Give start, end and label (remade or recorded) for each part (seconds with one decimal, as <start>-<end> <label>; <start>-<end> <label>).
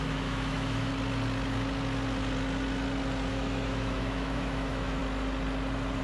0.0-0.9 remade; 0.9-3.3 recorded; 3.3-5.0 remade; 5.0-6.0 recorded